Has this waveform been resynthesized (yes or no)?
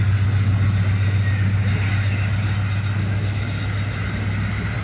no